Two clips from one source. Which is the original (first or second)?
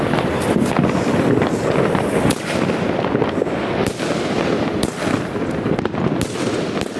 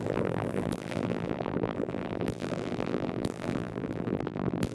first